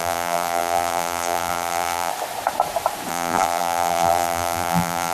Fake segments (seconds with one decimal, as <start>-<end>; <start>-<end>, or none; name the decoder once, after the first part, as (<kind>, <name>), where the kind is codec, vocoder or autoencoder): 0.0-2.1 (vocoder, BigVGAN v2); 3.1-5.1